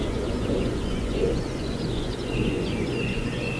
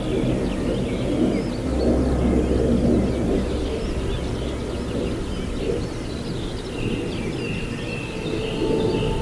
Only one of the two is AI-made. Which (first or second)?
first